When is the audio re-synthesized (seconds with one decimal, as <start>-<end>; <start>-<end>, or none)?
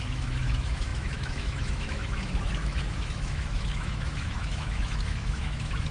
0.0-5.9